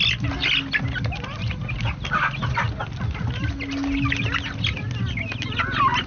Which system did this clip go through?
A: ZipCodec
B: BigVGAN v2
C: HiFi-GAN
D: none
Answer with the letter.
D